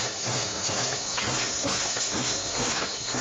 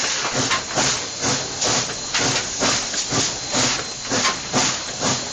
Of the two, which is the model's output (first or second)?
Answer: first